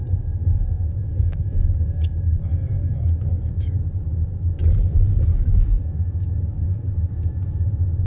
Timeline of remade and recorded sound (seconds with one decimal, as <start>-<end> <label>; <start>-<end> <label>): 0.0-1.1 recorded; 1.1-3.3 remade; 3.3-5.3 recorded; 5.3-7.2 remade; 7.2-8.1 recorded